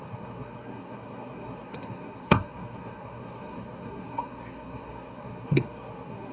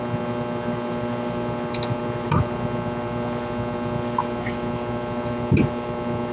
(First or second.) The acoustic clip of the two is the second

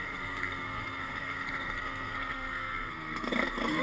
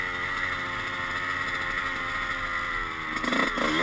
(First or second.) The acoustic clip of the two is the second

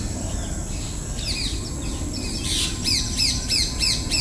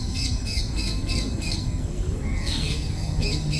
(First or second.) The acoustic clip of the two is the first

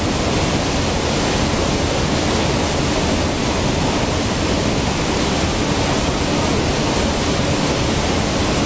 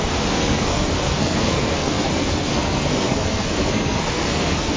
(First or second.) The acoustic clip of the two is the first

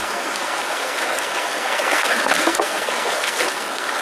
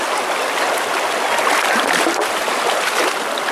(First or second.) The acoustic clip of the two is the second